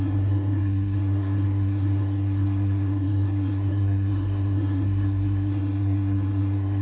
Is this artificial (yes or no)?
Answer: yes